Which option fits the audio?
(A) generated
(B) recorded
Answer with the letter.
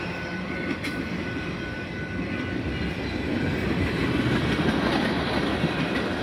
B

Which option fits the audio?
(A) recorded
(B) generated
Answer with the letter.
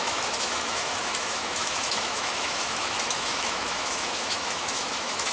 B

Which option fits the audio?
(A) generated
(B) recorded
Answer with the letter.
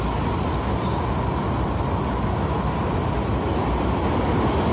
B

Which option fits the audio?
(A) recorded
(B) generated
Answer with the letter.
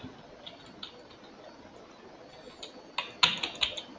A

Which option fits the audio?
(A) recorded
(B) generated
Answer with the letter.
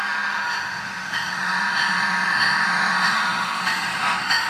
B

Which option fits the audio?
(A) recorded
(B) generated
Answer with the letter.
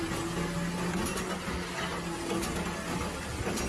A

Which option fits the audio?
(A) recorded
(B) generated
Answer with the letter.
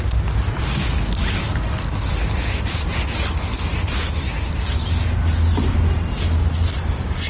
A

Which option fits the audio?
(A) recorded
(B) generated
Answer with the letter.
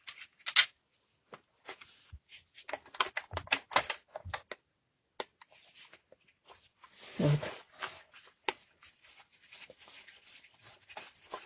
A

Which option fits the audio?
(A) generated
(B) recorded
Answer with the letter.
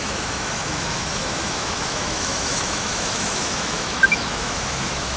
A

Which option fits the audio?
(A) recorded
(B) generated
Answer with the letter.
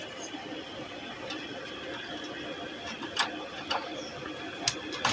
A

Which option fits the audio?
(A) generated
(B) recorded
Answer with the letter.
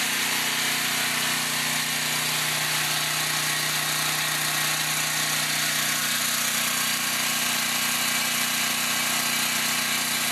B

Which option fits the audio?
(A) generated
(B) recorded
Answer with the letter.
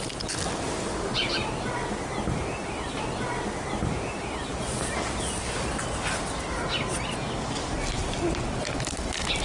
B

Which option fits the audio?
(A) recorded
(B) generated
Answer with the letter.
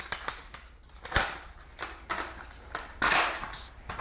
A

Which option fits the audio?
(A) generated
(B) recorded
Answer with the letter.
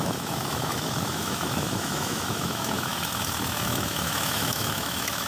A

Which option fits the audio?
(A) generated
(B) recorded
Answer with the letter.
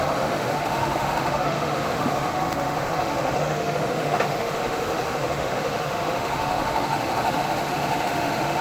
A